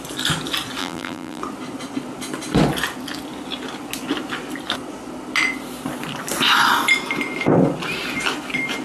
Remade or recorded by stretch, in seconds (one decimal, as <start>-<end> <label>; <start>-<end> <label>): 0.0-0.8 recorded; 0.8-1.4 remade; 1.4-8.8 recorded